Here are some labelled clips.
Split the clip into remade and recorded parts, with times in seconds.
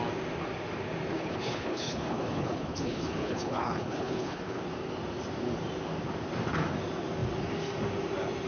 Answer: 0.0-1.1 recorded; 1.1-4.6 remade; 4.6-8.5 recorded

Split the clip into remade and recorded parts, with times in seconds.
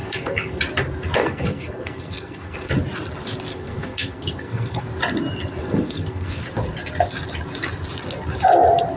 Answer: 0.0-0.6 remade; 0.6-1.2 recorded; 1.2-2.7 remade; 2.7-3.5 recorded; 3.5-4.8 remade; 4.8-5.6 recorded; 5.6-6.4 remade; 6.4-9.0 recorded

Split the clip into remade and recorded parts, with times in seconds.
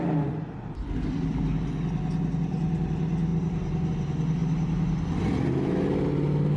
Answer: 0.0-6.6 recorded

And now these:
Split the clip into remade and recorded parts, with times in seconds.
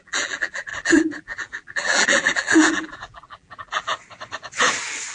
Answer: 0.0-3.9 remade; 3.9-5.1 recorded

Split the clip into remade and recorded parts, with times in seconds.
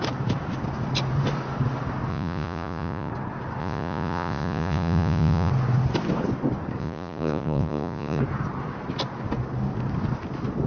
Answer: 0.0-2.1 recorded; 2.1-3.1 remade; 3.1-3.6 recorded; 3.6-5.5 remade; 5.5-6.8 recorded; 6.8-8.2 remade; 8.2-10.7 recorded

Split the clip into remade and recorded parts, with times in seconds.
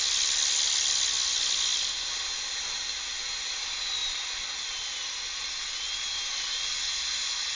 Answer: 0.0-4.0 recorded; 4.0-5.2 remade; 5.2-7.5 recorded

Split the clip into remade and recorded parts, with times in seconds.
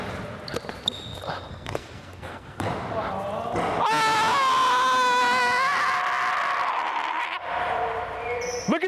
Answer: 0.0-1.5 recorded; 1.5-2.7 remade; 2.7-8.9 recorded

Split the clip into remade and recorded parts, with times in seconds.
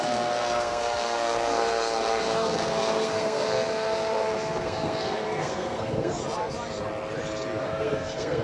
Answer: 0.0-6.2 remade; 6.2-7.6 recorded; 7.6-8.4 remade